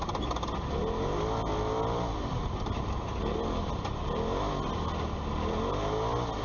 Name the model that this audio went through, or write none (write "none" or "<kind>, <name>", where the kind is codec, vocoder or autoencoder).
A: none